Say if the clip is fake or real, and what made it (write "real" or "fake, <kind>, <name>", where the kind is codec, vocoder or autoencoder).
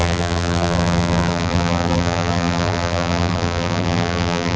fake, vocoder, BigVGAN v2